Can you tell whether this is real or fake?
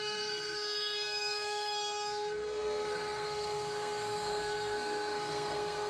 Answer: fake